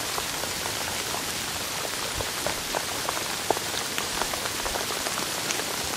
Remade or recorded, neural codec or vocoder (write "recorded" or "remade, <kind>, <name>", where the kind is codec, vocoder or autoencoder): recorded